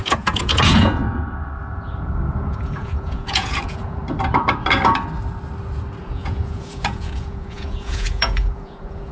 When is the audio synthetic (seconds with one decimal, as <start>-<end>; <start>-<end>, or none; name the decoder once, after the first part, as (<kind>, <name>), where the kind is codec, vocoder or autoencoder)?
0.0-1.0 (vocoder, Vocos); 2.5-4.0; 6.0-9.1